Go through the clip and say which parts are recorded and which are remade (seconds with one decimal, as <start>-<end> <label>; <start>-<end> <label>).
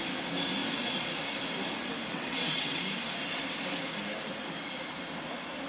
0.0-2.1 recorded; 2.1-2.8 remade; 2.8-5.7 recorded